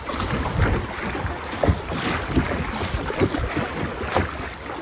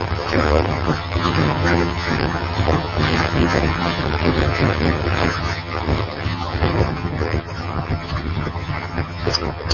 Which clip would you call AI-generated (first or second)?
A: second